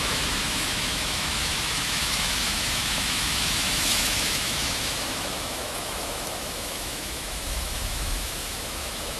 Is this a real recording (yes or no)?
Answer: no